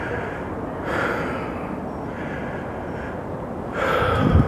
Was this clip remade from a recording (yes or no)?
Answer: no